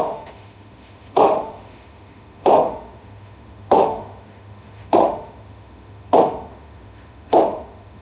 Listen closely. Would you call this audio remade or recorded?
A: remade